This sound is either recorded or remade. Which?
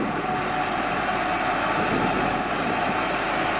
recorded